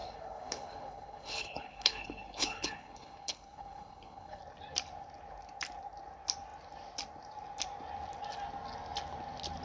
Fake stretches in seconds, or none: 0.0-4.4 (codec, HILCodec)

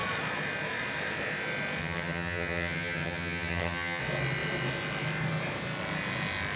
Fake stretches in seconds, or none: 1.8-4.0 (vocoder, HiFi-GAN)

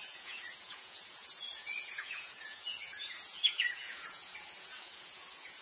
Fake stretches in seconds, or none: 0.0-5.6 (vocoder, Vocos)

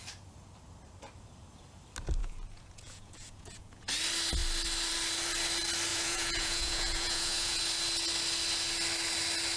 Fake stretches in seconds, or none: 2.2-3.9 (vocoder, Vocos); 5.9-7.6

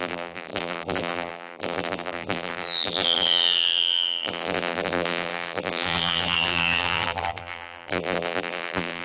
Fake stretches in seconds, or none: 0.0-9.0 (vocoder, BigVGAN v2)

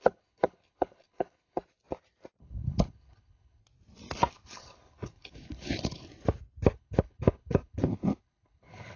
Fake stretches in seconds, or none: 0.0-1.6 (codec, HILCodec); 2.4-3.6; 4.3-6.1; 6.7-9.0

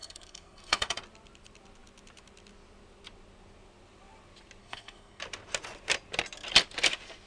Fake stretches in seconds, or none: 0.0-1.0 (codec, SNAC); 4.6-5.2